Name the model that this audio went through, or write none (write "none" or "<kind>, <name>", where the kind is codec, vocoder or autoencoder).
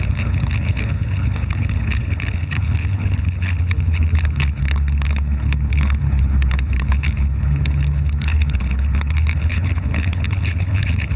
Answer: codec, HILCodec